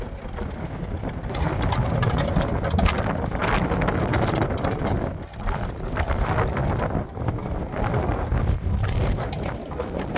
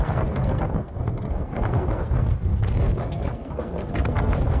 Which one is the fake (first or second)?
second